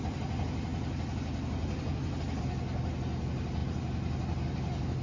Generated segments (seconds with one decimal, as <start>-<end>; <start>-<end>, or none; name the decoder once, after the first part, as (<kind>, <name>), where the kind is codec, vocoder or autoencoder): none